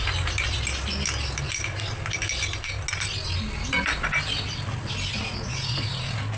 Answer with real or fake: real